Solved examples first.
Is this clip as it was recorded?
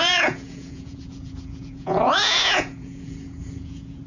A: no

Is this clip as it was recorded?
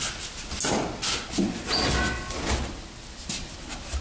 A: yes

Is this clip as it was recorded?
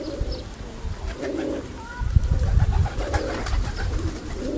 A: yes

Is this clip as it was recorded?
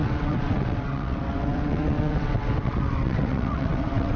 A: no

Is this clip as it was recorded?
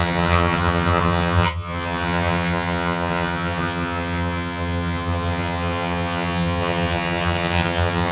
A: no